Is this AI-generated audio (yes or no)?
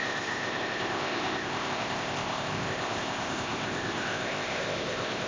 yes